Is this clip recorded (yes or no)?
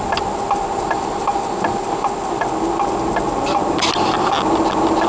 yes